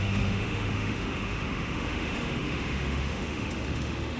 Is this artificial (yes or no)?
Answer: yes